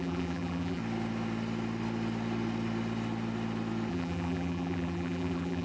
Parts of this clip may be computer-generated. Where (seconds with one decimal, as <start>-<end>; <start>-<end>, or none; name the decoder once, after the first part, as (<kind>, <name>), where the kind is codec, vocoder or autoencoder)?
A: 0.0-0.8 (vocoder, BigVGAN v2); 3.9-5.6